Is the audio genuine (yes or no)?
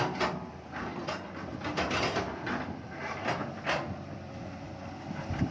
yes